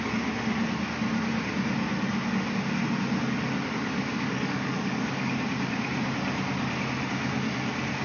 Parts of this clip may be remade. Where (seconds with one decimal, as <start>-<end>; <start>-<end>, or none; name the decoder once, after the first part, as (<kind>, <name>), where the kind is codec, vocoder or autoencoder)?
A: 4.1-5.3 (codec, DAC)